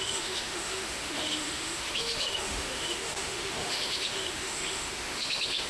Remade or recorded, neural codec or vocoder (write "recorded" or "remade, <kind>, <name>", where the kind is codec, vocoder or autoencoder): remade, autoencoder, DAC-VAE